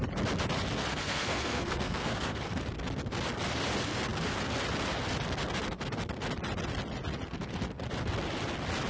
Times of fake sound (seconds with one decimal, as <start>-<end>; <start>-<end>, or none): 0.9-2.6